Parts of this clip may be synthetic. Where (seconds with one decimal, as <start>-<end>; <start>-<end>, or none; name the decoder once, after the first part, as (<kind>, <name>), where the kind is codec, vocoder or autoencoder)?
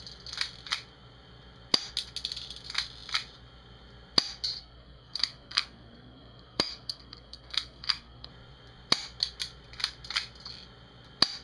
4.6-8.3 (codec, SNAC)